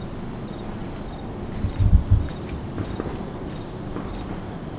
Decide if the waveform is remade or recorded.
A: recorded